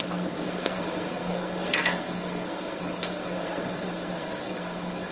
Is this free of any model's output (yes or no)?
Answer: no